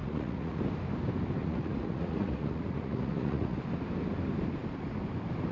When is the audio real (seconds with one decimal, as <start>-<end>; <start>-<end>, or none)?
0.6-1.4; 3.6-5.5